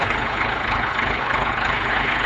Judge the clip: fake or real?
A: fake